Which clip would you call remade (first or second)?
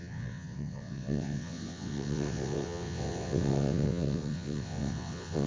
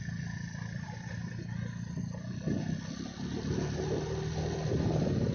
first